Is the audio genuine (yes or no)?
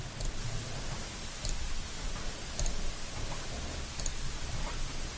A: yes